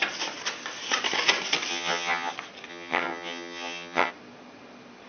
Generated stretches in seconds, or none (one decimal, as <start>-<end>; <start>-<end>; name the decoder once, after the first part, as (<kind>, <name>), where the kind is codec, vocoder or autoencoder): 1.7-2.3 (vocoder, HiFi-GAN); 2.7-4.1